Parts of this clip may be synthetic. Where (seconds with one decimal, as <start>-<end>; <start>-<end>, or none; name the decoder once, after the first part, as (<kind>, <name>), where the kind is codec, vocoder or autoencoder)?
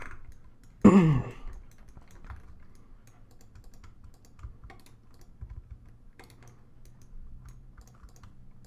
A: none